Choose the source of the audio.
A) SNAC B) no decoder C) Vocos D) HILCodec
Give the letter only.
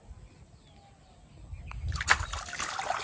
B